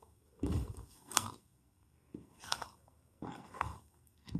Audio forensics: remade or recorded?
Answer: remade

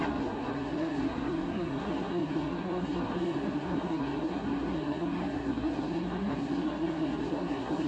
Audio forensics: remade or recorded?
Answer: remade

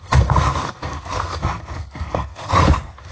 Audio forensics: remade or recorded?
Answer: remade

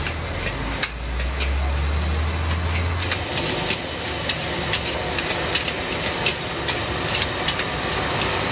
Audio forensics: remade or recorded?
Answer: recorded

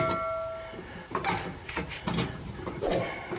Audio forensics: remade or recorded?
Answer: recorded